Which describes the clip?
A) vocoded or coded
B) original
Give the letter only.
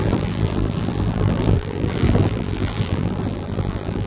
A